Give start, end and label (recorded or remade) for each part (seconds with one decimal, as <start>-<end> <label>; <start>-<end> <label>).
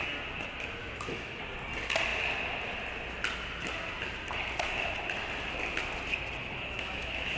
0.0-0.8 recorded; 0.8-1.4 remade; 1.4-6.4 recorded; 6.4-7.4 remade